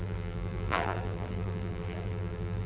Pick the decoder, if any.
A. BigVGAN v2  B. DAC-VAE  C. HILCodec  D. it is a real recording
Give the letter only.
A